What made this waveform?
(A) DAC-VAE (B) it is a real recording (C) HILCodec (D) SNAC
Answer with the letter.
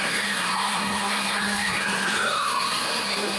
D